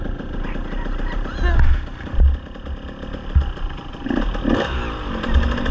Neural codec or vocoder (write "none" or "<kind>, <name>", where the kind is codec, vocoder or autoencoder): none